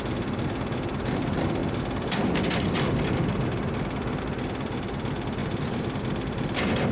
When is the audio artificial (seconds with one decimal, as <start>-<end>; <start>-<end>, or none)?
5.4-6.0